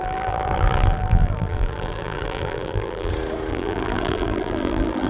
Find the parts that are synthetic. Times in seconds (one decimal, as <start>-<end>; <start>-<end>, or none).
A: 0.0-3.1; 3.5-5.1